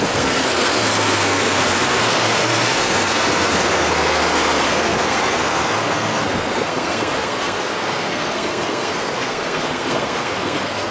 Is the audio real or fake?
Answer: fake